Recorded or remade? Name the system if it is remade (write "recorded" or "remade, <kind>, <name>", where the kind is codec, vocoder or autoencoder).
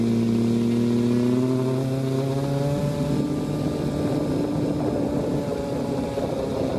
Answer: recorded